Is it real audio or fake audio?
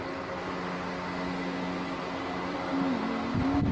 real